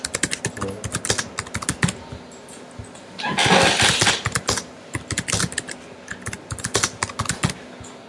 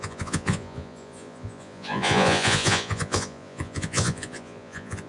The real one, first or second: first